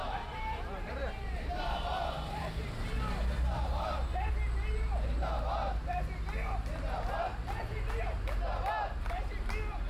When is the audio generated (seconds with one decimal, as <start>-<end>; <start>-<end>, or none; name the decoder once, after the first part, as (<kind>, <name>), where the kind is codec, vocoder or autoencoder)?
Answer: 0.0-4.3 (vocoder, BigVGAN v2)